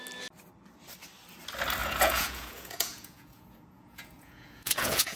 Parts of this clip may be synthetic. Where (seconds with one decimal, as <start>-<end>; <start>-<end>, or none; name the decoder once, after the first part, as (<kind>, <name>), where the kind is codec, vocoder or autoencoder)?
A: 1.8-5.2 (vocoder, Vocos)